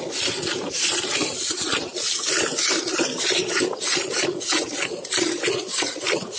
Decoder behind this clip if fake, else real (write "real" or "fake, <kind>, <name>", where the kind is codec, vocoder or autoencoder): real